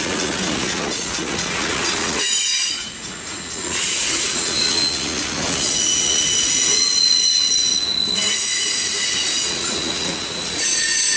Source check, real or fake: fake